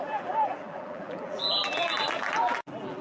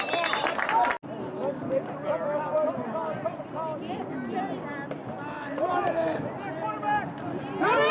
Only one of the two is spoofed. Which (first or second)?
first